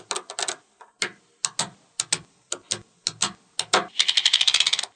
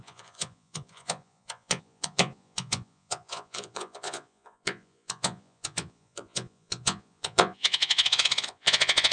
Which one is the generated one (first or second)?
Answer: second